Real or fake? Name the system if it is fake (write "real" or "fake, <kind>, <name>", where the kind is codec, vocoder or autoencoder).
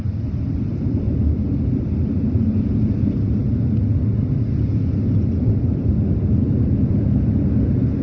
real